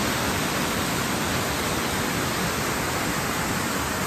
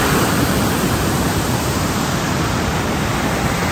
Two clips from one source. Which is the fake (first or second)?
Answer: second